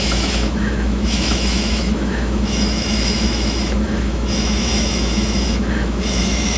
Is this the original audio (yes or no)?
no